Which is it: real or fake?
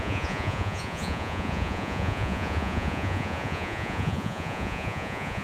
fake